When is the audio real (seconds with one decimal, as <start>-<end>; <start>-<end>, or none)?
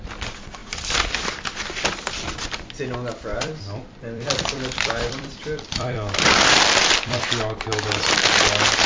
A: 0.0-3.3; 7.2-8.9